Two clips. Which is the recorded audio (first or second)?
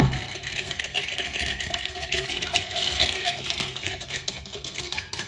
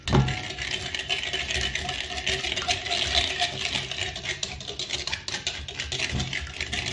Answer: second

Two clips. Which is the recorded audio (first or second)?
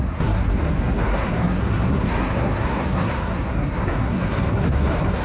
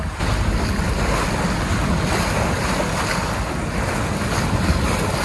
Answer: second